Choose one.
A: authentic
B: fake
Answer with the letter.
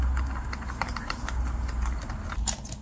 A